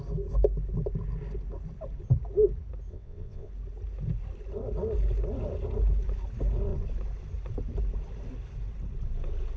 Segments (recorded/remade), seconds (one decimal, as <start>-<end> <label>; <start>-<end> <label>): 0.0-2.9 recorded; 2.9-3.5 remade; 3.5-9.6 recorded